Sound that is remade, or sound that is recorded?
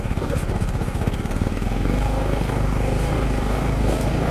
remade